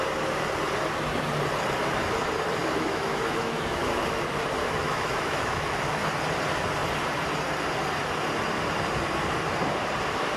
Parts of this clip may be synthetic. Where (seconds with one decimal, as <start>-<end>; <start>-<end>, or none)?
2.6-4.0; 4.6-5.8